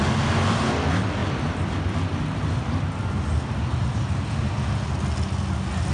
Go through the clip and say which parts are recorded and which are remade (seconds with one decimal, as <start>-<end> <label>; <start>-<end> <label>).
0.0-5.9 recorded